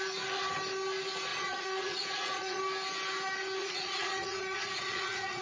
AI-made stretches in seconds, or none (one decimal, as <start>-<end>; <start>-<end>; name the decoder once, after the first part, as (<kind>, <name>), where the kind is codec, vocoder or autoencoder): 1.3-2.6 (vocoder, Vocos); 3.6-5.4